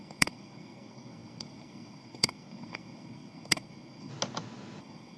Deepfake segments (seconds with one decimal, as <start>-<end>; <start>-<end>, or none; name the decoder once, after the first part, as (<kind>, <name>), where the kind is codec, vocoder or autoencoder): 0.0-4.1 (codec, SNAC); 4.8-5.2